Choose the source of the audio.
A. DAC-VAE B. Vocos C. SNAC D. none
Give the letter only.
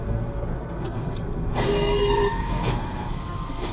C